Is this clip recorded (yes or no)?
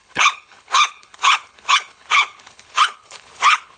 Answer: no